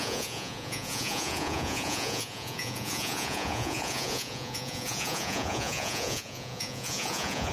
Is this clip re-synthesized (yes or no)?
yes